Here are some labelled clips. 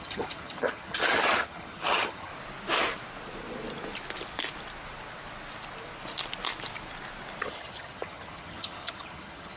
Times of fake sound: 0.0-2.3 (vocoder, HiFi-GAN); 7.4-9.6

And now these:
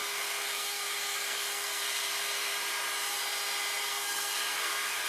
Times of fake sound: 0.0-2.5 (codec, SNAC); 3.8-5.1